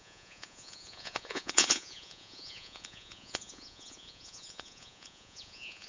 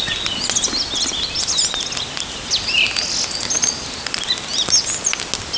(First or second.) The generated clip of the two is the first